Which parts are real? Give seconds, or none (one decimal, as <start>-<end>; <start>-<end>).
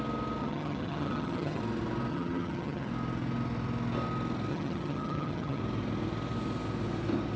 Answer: 0.0-0.4; 1.6-2.1; 2.9-4.5; 5.6-7.4